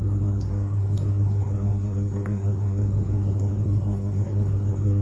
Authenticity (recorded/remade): remade